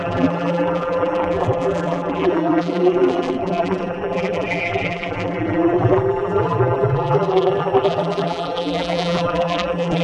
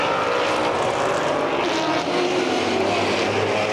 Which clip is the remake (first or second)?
first